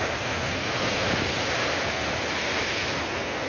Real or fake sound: real